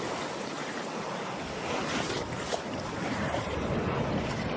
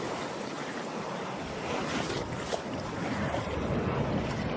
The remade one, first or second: first